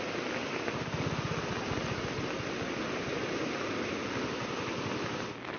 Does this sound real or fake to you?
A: real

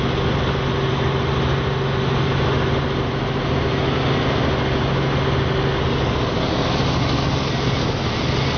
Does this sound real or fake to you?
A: real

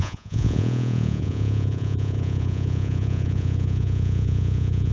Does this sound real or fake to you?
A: fake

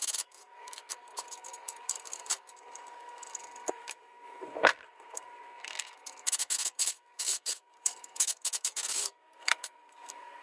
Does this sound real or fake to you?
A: fake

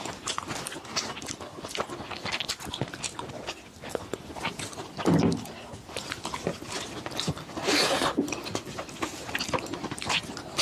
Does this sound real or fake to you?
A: real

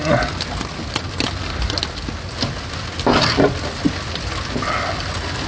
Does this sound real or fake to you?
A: real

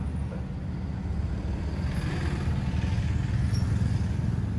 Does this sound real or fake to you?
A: real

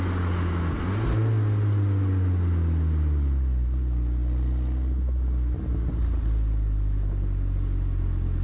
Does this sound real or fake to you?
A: real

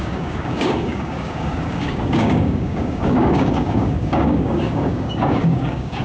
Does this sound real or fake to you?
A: fake